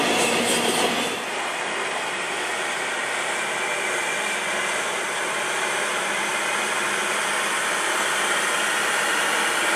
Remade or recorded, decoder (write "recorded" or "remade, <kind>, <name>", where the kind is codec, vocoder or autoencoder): recorded